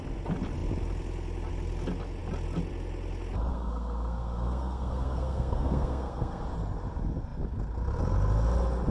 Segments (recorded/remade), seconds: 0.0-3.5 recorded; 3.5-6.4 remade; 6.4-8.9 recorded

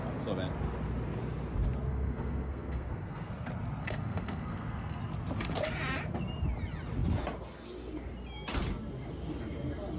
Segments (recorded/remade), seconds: 0.0-1.9 recorded; 1.9-3.3 remade; 3.3-3.8 recorded; 3.8-5.0 remade; 5.0-10.0 recorded

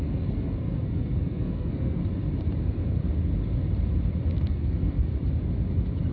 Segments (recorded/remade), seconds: 0.0-2.0 remade; 2.0-2.6 recorded; 2.6-3.0 remade; 3.0-4.3 recorded; 4.3-5.1 remade; 5.1-6.1 recorded

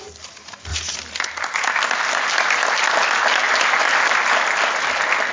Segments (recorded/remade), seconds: 0.0-5.3 recorded

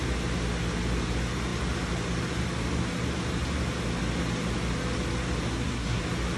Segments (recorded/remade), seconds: 0.0-5.5 recorded; 5.5-6.0 remade; 6.0-6.4 recorded